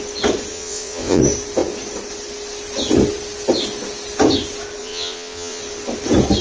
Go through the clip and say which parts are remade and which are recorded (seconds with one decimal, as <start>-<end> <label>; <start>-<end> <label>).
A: 0.0-0.5 recorded; 0.5-1.2 remade; 1.2-4.8 recorded; 4.8-5.6 remade; 5.6-6.4 recorded